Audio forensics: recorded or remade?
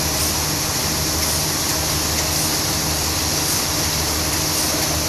recorded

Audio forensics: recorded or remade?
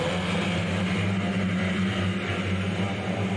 recorded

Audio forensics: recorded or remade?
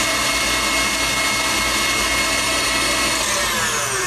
recorded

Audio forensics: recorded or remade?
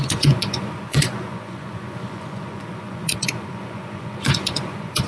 remade